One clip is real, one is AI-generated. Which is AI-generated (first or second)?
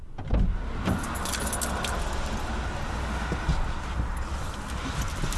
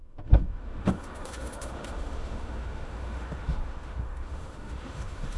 second